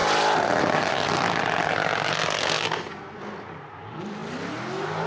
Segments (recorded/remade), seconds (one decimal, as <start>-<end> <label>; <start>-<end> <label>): 0.0-2.4 recorded; 2.4-3.2 remade; 3.2-5.1 recorded